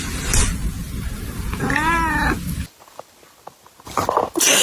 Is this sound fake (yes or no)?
no